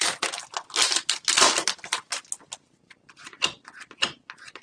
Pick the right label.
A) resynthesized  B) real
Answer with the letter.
B